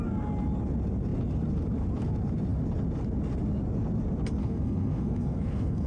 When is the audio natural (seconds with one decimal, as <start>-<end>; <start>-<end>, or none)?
0.0-4.4